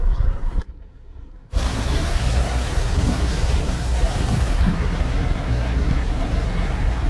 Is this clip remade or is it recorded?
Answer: remade